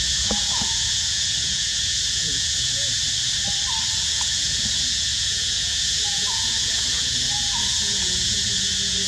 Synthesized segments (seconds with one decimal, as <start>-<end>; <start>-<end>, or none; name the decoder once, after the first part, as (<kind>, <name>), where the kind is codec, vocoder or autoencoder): 0.0-3.0 (vocoder, Vocos); 3.9-9.1